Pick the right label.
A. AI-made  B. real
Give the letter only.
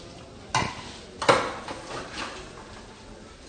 B